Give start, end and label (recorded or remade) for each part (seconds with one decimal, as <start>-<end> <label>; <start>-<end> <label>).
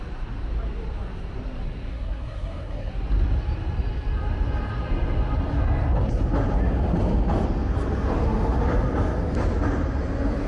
0.0-1.9 recorded; 1.9-2.9 remade; 2.9-10.5 recorded